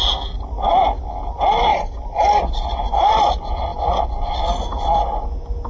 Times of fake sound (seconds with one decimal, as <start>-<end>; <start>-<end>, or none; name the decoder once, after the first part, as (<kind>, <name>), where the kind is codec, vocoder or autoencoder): none